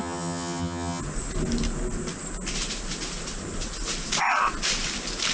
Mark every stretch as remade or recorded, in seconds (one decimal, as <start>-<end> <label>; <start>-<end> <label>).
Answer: 0.0-1.0 remade; 1.0-5.3 recorded